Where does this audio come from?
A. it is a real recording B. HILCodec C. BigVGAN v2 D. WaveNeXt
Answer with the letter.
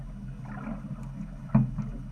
A